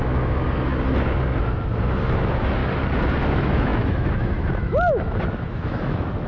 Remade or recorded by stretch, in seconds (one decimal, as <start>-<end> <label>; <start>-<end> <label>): 0.0-0.7 remade; 0.7-1.8 recorded; 1.8-2.6 remade; 2.6-3.3 recorded; 3.3-6.3 remade